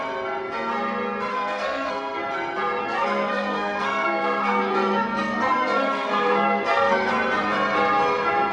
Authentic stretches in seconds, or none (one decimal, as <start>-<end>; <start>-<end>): 0.0-1.3; 2.2-2.8; 7.1-8.5